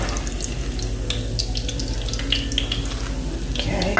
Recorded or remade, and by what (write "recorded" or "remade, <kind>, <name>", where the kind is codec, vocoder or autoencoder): recorded